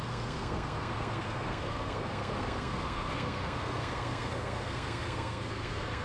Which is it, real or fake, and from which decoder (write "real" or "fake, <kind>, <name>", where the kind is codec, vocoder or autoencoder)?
fake, codec, SNAC